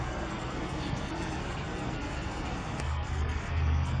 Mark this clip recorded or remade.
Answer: remade